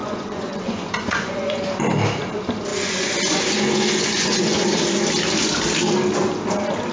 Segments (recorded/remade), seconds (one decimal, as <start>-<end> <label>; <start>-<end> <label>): 0.0-1.6 remade; 1.6-2.7 recorded; 2.7-4.6 remade; 4.6-6.9 recorded